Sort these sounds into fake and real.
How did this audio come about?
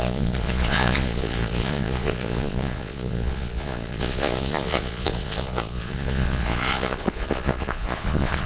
fake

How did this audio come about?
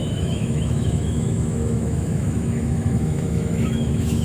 fake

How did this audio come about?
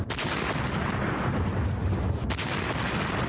real